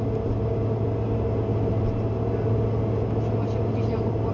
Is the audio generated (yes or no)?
no